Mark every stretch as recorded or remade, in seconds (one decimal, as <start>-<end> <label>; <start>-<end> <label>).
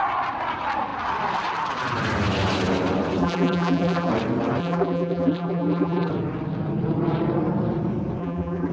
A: 0.0-3.2 recorded; 3.2-4.1 remade; 4.1-4.6 recorded; 4.6-6.1 remade; 6.1-8.2 recorded; 8.2-8.7 remade